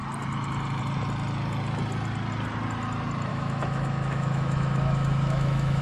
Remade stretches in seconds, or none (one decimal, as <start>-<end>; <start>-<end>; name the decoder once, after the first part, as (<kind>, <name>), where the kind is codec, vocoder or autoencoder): 3.3-5.8 (autoencoder, DAC-VAE)